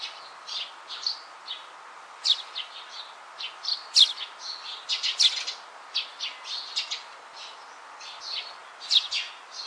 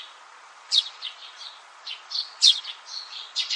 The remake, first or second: second